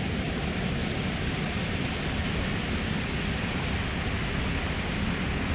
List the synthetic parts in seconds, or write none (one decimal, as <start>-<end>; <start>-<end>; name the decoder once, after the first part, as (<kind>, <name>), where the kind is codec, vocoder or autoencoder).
none